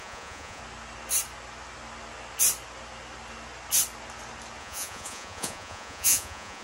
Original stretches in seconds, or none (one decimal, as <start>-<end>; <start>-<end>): 0.6-4.6